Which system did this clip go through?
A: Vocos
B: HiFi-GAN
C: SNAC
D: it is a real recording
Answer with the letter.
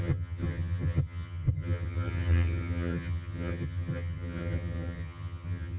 B